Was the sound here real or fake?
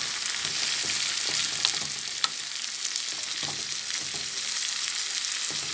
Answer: real